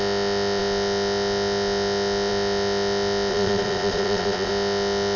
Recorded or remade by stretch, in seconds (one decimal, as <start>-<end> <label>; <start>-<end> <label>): 0.0-3.3 recorded; 3.3-4.5 remade; 4.5-5.2 recorded